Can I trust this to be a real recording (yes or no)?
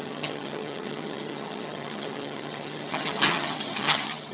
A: no